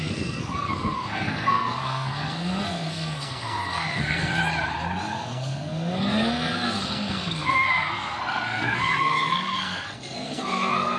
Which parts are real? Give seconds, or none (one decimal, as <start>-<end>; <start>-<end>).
4.4-5.0